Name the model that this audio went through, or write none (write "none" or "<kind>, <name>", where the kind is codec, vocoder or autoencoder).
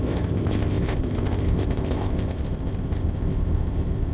codec, ZipCodec